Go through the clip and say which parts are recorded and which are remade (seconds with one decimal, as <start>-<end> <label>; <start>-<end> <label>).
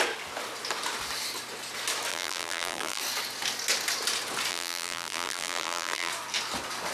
0.0-2.1 recorded; 2.1-3.0 remade; 3.0-4.5 recorded; 4.5-6.1 remade; 6.1-6.9 recorded